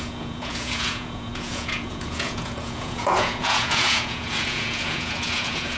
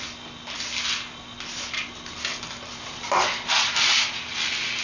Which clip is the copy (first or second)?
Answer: first